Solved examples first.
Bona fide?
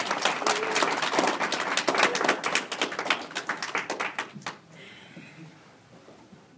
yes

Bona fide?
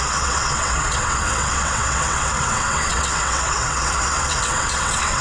no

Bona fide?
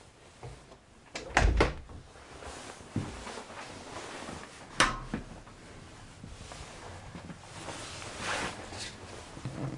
yes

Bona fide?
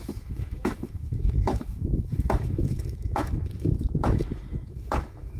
no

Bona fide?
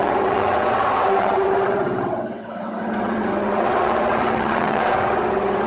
no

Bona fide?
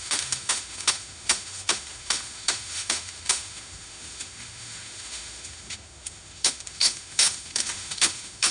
no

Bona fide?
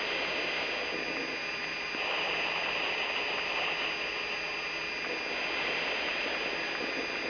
yes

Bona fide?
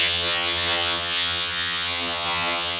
no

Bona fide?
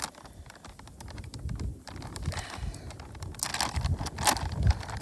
yes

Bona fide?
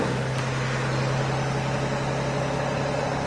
yes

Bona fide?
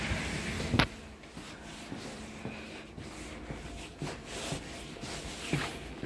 yes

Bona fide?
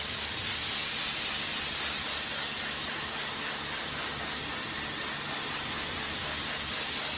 yes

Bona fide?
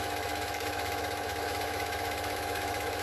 no